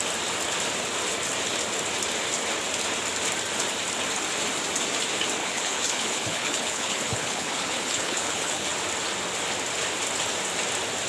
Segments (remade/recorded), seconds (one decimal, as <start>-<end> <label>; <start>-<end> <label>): 0.0-5.4 recorded; 5.4-8.7 remade; 8.7-11.1 recorded